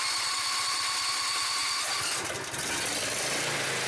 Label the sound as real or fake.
real